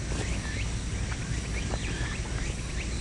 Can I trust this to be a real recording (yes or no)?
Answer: yes